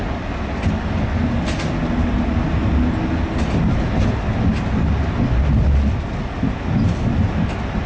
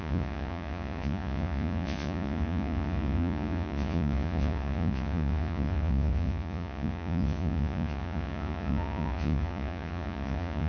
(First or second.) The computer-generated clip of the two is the second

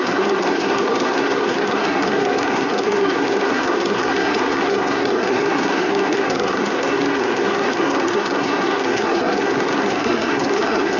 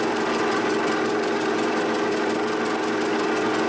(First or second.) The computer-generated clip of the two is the first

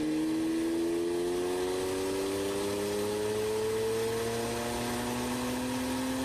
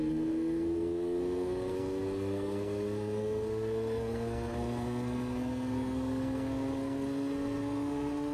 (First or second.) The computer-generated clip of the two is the second